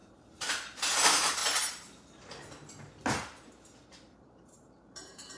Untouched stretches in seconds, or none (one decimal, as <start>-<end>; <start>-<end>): 1.4-4.4